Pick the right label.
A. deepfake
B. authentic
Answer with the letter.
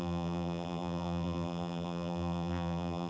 A